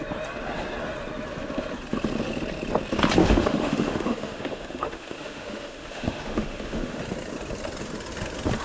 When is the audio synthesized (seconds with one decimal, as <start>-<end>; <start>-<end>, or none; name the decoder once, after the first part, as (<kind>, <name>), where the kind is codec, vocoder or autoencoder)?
3.2-7.0 (autoencoder, DAC-VAE)